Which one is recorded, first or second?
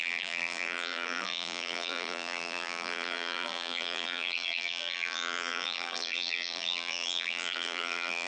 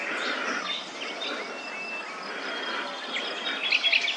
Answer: second